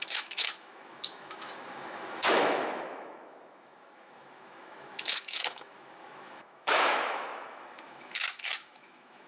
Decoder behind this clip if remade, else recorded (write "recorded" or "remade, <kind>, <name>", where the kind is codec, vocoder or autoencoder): remade, autoencoder, DAC-VAE